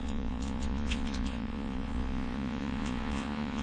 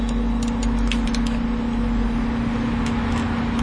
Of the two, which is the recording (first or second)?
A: second